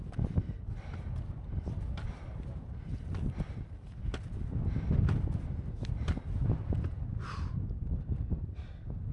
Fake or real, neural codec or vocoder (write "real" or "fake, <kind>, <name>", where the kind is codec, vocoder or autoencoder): real